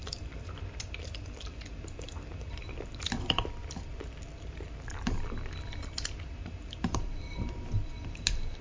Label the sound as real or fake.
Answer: fake